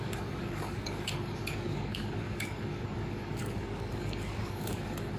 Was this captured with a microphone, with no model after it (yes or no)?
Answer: no